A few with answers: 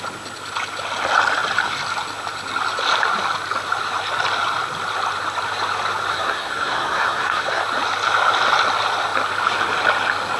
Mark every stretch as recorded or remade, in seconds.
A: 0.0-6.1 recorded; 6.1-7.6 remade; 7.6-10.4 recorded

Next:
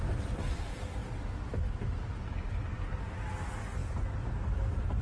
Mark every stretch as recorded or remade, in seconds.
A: 0.0-5.0 recorded

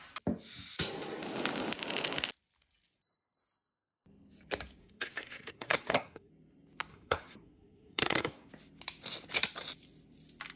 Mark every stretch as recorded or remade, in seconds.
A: 0.0-4.8 recorded; 4.8-6.3 remade; 6.3-6.9 recorded; 6.9-8.5 remade; 8.5-10.6 recorded

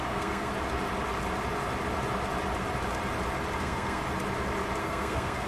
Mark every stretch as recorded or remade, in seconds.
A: 0.0-0.5 remade; 0.5-3.6 recorded; 3.6-4.0 remade; 4.0-4.8 recorded; 4.8-5.5 remade

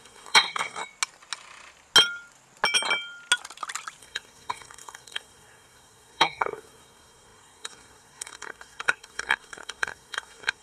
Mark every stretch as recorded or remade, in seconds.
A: 0.0-0.8 remade; 0.8-4.0 recorded; 4.0-10.6 remade

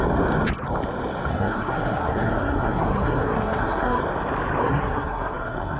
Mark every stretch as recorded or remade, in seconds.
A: 0.0-1.3 recorded; 1.3-4.0 remade; 4.0-4.6 recorded; 4.6-5.8 remade

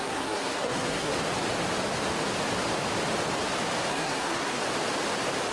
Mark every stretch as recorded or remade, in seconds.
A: 0.0-1.1 remade; 1.1-3.9 recorded; 3.9-4.6 remade; 4.6-5.5 recorded

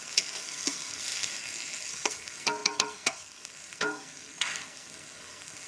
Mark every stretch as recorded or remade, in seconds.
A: 0.0-5.7 remade